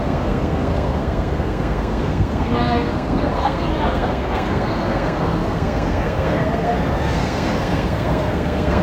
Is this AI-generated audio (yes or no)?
yes